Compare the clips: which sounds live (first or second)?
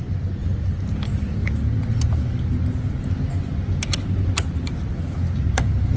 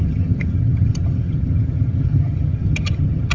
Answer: first